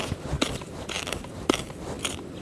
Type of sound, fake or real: real